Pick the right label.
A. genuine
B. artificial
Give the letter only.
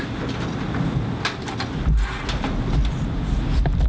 A